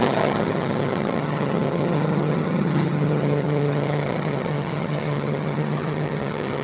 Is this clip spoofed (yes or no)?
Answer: yes